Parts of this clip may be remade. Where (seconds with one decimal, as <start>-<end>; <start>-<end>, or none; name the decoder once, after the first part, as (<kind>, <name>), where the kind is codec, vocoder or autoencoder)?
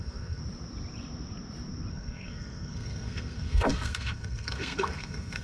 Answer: 0.0-0.4 (codec, SNAC); 1.9-5.4